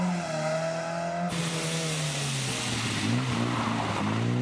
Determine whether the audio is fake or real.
real